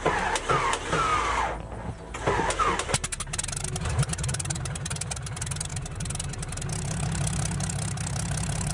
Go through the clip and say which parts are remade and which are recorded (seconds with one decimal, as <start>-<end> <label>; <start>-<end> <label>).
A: 0.0-8.7 recorded